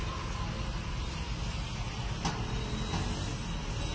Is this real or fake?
real